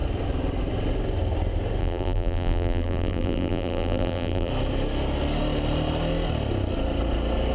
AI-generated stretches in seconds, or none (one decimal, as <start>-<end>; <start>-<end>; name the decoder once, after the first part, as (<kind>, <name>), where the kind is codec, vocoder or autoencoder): 1.8-4.5 (vocoder, BigVGAN v2)